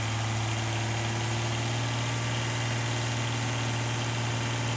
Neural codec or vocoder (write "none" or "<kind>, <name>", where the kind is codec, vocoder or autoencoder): none